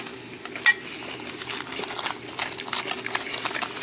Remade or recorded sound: recorded